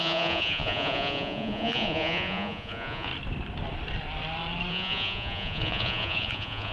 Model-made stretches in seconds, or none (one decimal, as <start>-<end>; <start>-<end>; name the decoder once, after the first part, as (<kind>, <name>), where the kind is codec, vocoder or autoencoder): 0.0-3.1 (vocoder, Vocos); 4.7-6.7